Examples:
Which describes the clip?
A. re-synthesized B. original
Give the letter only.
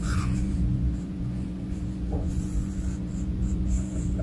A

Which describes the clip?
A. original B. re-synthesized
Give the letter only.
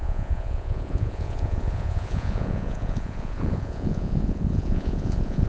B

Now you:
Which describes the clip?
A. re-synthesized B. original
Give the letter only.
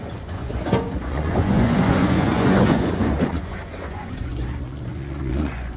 A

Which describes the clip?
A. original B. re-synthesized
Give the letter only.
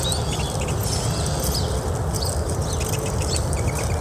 A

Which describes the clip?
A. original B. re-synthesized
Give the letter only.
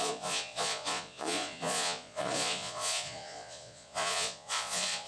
B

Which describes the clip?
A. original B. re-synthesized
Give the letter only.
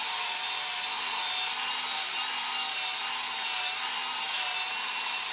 A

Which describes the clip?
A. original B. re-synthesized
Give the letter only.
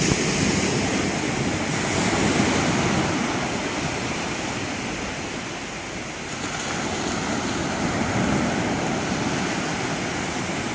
A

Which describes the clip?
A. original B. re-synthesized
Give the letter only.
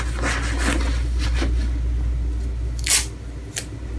A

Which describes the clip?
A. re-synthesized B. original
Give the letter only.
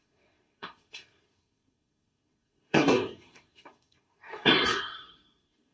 A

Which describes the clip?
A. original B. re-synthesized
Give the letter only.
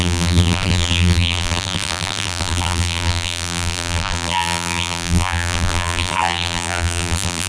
B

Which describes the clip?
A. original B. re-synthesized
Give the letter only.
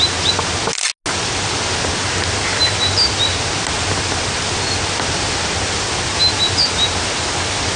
A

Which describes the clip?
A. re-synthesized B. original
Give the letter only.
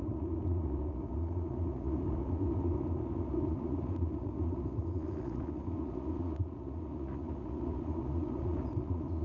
A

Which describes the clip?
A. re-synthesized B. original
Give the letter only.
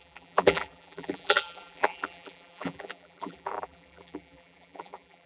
A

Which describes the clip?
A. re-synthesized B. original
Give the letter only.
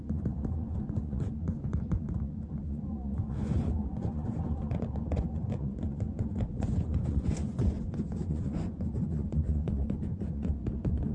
A